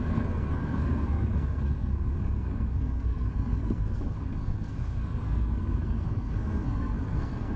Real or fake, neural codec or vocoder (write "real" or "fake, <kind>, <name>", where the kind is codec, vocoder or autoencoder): fake, codec, SNAC